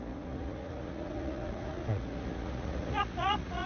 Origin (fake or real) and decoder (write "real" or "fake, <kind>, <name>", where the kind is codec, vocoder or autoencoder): fake, vocoder, Vocos